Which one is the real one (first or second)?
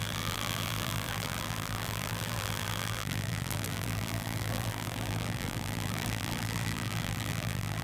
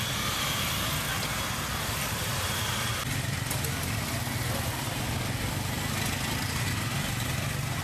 second